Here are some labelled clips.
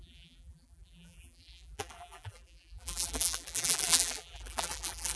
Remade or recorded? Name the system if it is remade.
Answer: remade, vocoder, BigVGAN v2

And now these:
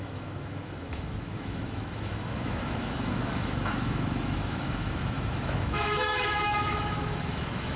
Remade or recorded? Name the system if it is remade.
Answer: remade, autoencoder, DAC-VAE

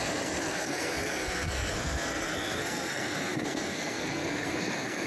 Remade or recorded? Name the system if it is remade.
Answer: remade, codec, SNAC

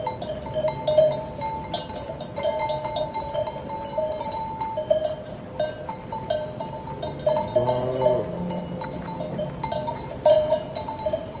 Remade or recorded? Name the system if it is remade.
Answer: recorded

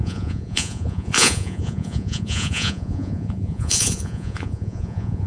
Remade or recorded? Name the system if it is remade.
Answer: remade, vocoder, Vocos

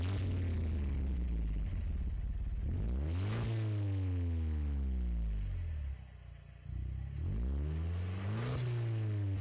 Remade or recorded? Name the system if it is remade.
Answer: recorded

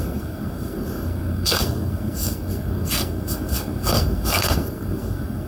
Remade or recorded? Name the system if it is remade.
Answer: remade, codec, SNAC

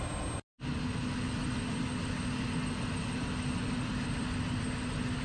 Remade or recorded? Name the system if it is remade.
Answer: recorded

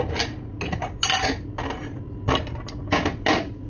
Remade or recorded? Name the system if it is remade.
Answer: recorded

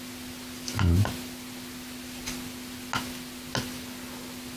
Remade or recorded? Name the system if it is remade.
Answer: recorded